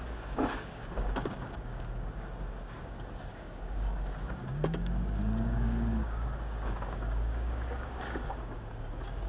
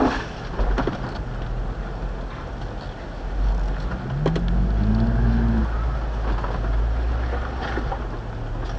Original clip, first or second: second